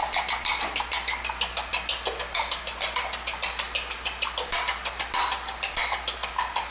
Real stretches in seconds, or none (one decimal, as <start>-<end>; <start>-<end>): 0.0-6.7